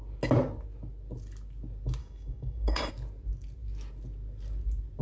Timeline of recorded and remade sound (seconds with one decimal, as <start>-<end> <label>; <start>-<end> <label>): 0.0-2.0 recorded; 2.0-2.9 remade; 2.9-5.0 recorded